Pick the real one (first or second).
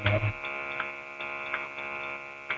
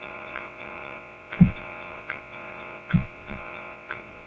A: first